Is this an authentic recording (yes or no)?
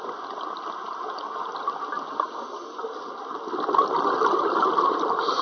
yes